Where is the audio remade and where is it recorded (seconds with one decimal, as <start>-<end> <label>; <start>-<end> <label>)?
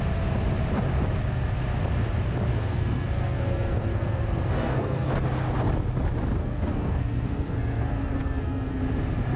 0.0-2.5 recorded; 2.5-5.1 remade; 5.1-6.4 recorded; 6.4-8.8 remade; 8.8-9.4 recorded